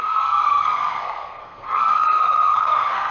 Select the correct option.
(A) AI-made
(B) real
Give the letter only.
A